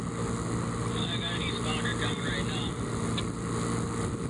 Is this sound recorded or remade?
recorded